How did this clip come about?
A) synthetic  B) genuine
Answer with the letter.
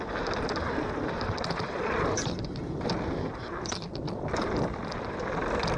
A